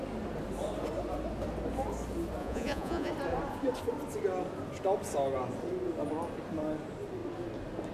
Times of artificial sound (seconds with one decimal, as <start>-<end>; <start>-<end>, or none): 2.4-3.1